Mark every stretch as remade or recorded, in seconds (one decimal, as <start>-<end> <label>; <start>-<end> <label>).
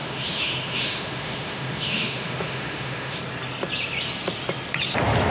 0.0-3.2 remade; 3.2-5.3 recorded